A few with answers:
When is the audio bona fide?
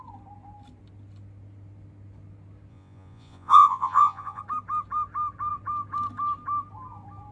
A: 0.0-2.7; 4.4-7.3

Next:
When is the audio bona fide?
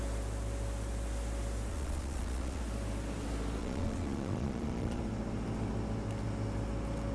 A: 0.0-1.7; 2.6-3.6; 5.0-7.1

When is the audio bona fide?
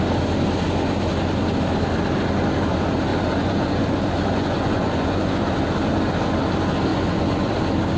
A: 0.0-3.1; 5.4-6.9; 7.5-8.0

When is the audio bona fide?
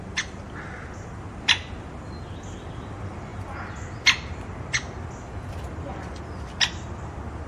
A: 0.0-7.5